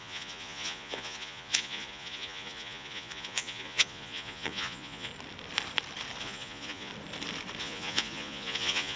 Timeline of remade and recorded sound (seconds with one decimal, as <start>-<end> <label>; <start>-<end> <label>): 0.0-5.1 remade; 5.1-6.2 recorded; 6.2-6.9 remade; 6.9-7.6 recorded; 7.6-9.0 remade